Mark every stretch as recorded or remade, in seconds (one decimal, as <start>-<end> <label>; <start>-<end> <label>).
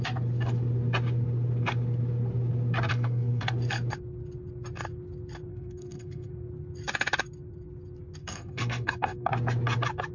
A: 0.0-2.9 recorded; 2.9-3.5 remade; 3.5-5.5 recorded; 5.5-6.3 remade; 6.3-8.2 recorded; 8.2-9.3 remade; 9.3-10.1 recorded